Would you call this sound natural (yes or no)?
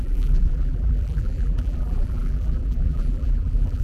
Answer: no